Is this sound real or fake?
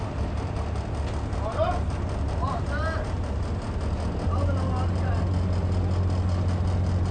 real